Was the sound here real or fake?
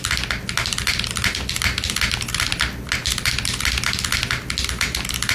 real